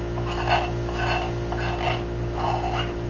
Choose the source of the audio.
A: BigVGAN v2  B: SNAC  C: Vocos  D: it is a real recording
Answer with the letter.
D